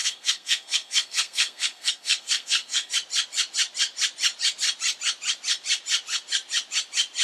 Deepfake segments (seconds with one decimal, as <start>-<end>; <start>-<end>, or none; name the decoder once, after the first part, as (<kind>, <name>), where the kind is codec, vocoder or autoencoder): 0.0-2.9 (codec, SNAC)